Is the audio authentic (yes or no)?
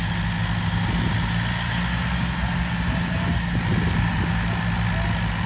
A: yes